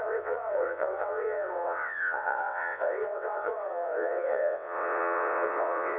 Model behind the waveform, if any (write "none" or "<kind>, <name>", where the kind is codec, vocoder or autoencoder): vocoder, WaveNeXt